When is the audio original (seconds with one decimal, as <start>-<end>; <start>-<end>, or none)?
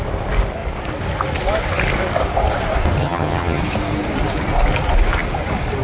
0.0-3.0; 3.6-5.8